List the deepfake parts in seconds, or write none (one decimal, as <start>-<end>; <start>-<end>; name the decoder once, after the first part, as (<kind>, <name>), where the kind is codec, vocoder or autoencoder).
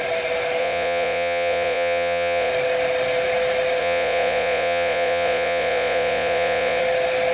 0.6-2.5 (vocoder, Vocos); 3.8-6.8